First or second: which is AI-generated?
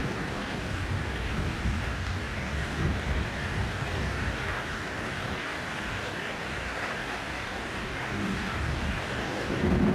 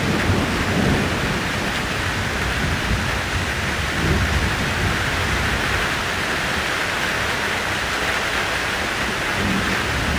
first